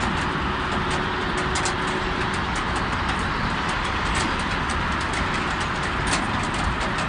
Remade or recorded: recorded